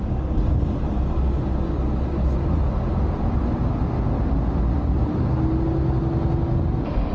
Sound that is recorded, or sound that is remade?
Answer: recorded